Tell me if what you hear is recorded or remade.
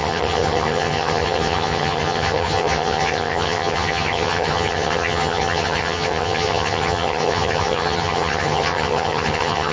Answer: remade